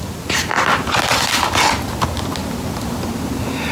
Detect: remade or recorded recorded